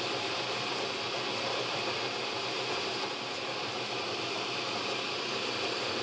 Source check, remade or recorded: remade